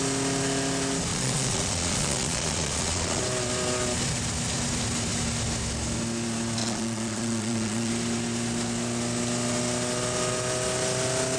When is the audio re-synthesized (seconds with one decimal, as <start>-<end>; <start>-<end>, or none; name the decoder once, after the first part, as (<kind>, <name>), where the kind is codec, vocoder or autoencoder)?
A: 1.1-3.2 (vocoder, Vocos); 6.6-7.9